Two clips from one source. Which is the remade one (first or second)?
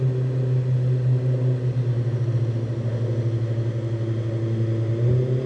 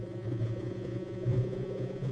second